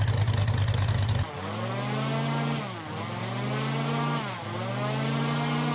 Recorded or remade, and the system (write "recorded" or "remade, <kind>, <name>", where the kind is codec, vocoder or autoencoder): recorded